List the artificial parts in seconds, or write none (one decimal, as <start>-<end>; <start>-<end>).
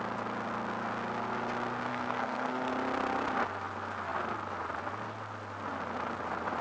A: 1.9-2.7